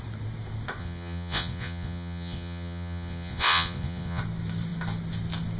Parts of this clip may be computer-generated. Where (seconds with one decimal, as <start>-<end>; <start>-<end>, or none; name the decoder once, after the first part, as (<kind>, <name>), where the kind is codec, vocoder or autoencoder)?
0.8-4.2 (vocoder, Vocos)